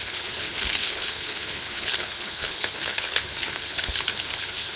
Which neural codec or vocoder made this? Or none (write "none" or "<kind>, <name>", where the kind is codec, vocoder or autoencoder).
codec, HILCodec